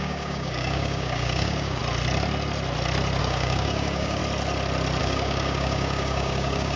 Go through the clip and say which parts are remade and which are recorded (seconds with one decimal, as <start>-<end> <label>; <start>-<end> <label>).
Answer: 0.0-1.8 remade; 1.8-3.2 recorded; 3.2-4.2 remade; 4.2-5.0 recorded; 5.0-6.8 remade